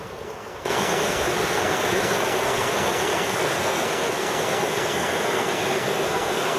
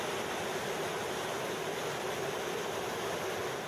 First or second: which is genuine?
second